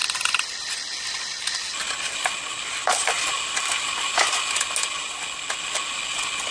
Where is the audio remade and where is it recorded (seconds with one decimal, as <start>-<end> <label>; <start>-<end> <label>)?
0.0-6.5 recorded